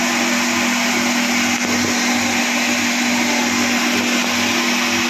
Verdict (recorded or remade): recorded